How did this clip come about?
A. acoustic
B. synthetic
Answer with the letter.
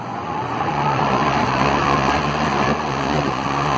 B